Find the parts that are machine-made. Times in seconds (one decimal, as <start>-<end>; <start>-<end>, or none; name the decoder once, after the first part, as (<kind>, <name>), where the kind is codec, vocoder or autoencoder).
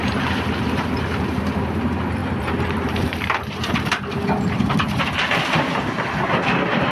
0.0-6.9 (vocoder, BigVGAN v2)